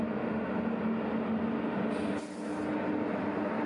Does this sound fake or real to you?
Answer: real